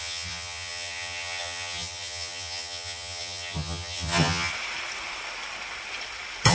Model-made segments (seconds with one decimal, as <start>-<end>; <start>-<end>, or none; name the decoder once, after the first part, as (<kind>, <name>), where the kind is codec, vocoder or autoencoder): 0.0-4.5 (vocoder, HiFi-GAN)